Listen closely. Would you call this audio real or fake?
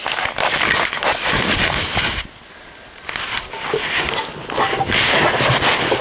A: real